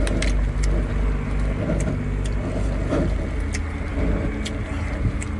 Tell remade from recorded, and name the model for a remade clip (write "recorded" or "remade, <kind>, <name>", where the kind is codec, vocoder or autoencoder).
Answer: recorded